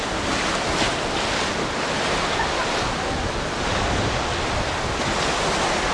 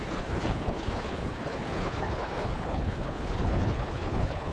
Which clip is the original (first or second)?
first